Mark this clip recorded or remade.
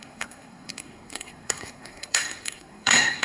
remade